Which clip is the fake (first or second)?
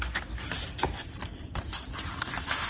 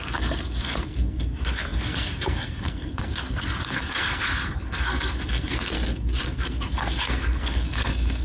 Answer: second